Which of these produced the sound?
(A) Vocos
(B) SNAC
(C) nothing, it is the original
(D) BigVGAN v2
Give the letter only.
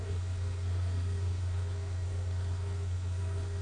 B